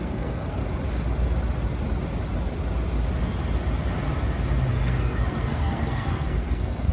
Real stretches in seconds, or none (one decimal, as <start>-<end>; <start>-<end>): 0.6-4.7